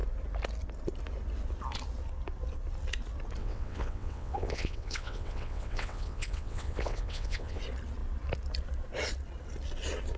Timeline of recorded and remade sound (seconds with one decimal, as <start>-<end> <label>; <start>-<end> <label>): 0.0-3.4 recorded; 3.4-7.6 remade; 7.6-10.2 recorded